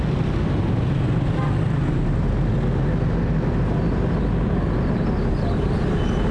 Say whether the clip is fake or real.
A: real